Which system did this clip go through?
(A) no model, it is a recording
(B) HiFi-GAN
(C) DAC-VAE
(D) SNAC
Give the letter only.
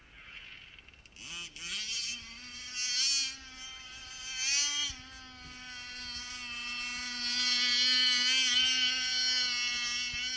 A